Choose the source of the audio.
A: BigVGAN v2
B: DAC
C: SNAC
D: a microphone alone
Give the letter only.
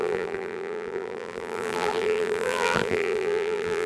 A